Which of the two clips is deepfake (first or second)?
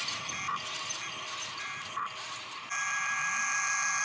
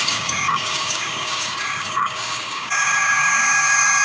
second